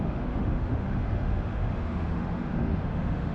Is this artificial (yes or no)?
yes